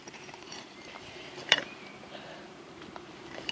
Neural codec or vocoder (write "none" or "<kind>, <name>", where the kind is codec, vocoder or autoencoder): vocoder, BigVGAN v2